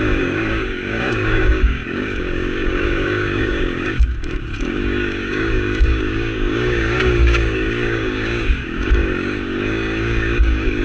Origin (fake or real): fake